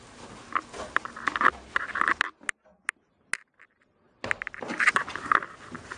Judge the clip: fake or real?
real